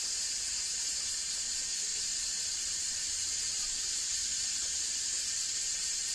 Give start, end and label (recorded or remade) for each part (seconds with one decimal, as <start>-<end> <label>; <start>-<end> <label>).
0.0-1.9 recorded; 1.9-3.8 remade; 3.8-4.2 recorded; 4.2-4.8 remade; 4.8-6.1 recorded

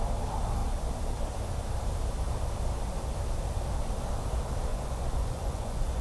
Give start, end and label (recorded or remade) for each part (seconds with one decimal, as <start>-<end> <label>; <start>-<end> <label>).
0.0-4.7 recorded; 4.7-6.0 remade

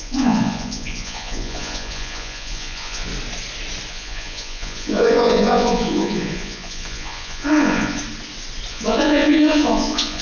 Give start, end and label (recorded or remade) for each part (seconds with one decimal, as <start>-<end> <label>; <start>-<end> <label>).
0.0-3.1 remade; 3.1-3.9 recorded; 3.9-8.0 remade; 8.0-8.7 recorded; 8.7-10.2 remade

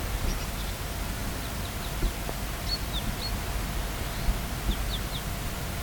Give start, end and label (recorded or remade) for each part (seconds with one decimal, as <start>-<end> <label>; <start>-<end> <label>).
0.0-1.2 recorded; 1.2-3.0 remade; 3.0-5.8 recorded

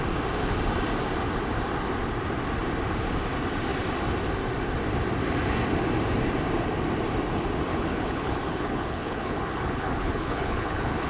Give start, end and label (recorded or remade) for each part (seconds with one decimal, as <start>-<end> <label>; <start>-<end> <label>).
0.0-7.7 recorded; 7.7-11.1 remade

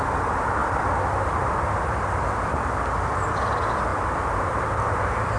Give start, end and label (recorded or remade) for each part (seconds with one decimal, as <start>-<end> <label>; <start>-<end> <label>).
0.0-5.4 recorded

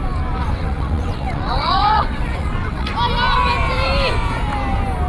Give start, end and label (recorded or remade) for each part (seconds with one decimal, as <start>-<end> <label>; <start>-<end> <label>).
0.0-0.4 recorded; 0.4-2.9 remade; 2.9-5.1 recorded

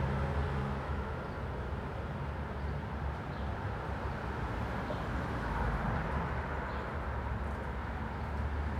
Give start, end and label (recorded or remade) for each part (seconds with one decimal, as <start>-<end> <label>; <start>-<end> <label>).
0.0-0.6 recorded; 0.6-1.2 remade; 1.2-8.8 recorded